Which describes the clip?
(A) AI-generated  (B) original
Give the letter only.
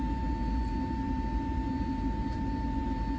B